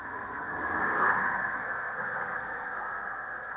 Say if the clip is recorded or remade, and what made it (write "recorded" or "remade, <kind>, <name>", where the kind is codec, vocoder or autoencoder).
remade, codec, SNAC